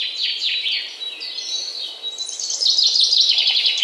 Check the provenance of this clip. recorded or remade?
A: recorded